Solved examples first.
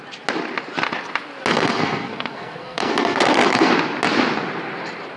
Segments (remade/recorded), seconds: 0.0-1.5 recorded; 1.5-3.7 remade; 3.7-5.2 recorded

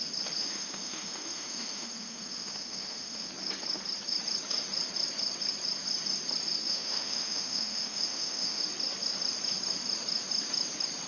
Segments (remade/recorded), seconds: 0.0-0.4 recorded; 0.4-3.3 remade; 3.3-6.7 recorded; 6.7-8.6 remade; 8.6-11.1 recorded

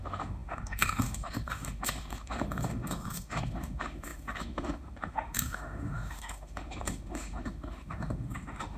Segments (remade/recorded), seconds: 0.0-8.8 remade